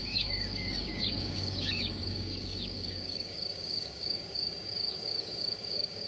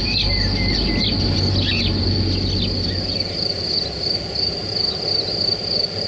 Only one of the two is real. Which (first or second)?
second